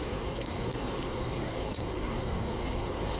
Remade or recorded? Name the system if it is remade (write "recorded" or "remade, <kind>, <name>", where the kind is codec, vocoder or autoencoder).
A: remade, codec, SNAC